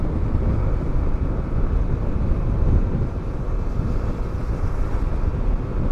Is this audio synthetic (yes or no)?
no